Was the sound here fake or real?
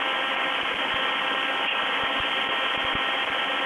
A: real